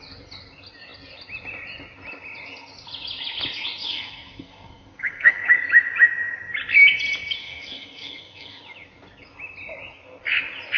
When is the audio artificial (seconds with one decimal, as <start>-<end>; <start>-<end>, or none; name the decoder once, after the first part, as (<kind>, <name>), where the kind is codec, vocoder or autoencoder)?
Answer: 3.9-5.5 (codec, SNAC); 7.4-8.6